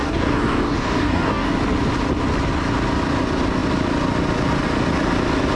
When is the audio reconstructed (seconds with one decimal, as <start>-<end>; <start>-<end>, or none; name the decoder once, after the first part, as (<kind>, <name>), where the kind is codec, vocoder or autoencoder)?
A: 0.0-1.5 (codec, DAC)